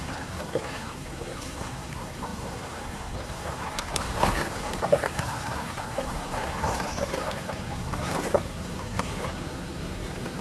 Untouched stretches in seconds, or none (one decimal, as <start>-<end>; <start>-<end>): none